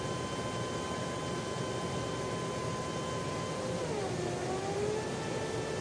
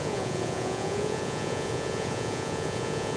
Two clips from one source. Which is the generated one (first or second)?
second